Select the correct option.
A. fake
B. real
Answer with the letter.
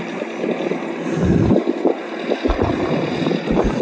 B